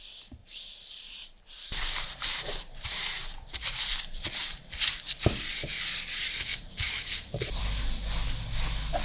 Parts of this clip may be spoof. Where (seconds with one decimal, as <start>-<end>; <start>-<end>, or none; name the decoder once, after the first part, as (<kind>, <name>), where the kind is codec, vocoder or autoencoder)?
0.4-4.7 (vocoder, BigVGAN v2); 6.5-7.6